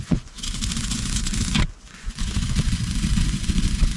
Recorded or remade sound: remade